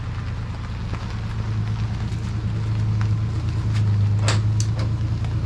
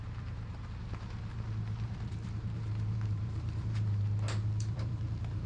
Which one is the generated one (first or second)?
second